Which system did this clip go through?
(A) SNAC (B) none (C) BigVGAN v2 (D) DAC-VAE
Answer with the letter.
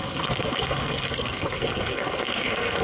A